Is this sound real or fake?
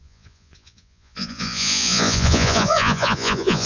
fake